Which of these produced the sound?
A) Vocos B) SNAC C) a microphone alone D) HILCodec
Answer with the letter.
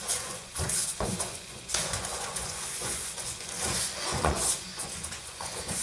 A